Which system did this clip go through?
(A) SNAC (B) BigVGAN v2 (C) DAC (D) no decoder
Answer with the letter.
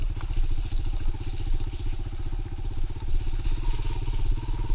D